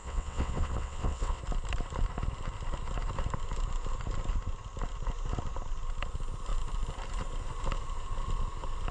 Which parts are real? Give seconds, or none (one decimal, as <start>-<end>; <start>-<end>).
1.4-8.9